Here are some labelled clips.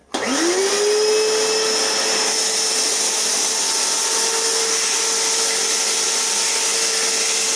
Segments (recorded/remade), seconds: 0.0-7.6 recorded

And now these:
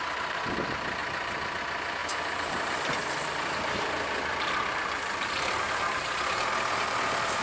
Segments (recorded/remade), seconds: 0.0-2.0 recorded; 2.0-5.6 remade; 5.6-7.4 recorded

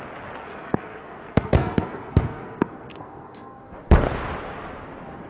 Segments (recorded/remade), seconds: 0.0-0.4 recorded; 0.4-3.6 remade; 3.6-5.3 recorded